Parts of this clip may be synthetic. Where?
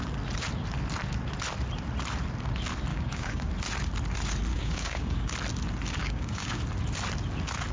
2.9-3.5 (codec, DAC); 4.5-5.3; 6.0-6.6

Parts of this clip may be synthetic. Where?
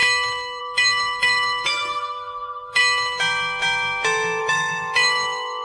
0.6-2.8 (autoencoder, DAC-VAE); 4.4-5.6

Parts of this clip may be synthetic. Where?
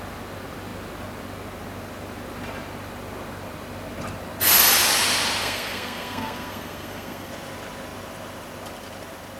5.4-7.3 (codec, SNAC)